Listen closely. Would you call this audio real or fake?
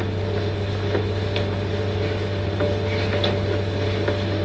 real